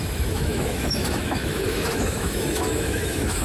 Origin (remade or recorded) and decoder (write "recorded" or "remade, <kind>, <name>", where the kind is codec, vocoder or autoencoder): remade, autoencoder, DAC-VAE